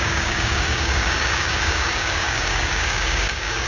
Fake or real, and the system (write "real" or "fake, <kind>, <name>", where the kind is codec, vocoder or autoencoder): fake, codec, DAC